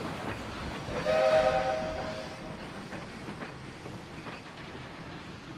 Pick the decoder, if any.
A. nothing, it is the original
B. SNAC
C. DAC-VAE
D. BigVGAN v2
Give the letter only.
A